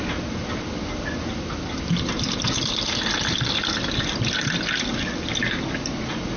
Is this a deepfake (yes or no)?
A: no